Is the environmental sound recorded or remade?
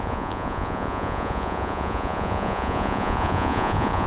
remade